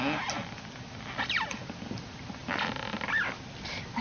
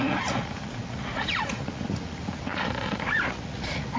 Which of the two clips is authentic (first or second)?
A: first